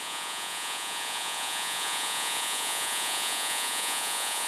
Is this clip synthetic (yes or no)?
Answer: yes